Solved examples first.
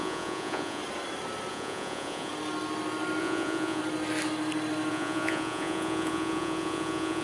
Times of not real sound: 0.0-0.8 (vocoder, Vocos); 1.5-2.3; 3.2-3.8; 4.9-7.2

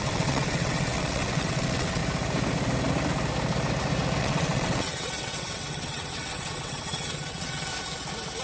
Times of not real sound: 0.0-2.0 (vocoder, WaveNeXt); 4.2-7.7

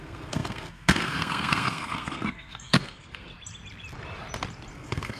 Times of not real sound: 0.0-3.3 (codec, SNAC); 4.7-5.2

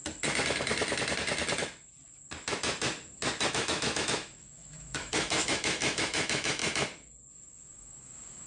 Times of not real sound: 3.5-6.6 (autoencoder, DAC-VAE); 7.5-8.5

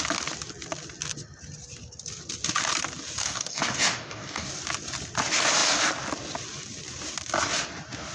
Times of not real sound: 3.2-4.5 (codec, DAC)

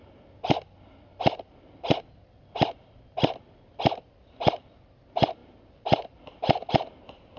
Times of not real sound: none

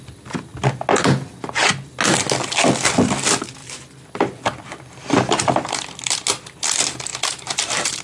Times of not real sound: 3.6-5.5 (vocoder, BigVGAN v2); 7.1-8.0

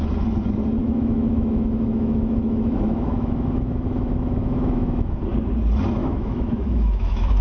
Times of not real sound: 0.8-5.2 (autoencoder, DAC-VAE); 6.0-7.4